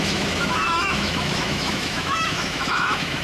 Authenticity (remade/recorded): remade